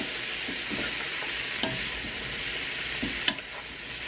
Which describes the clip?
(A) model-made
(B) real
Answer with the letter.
B